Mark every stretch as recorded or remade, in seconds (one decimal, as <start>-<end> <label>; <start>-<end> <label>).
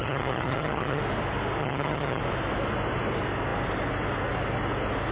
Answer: 0.0-1.0 remade; 1.0-1.6 recorded; 1.6-2.2 remade; 2.2-5.1 recorded